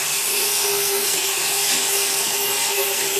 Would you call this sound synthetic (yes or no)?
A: yes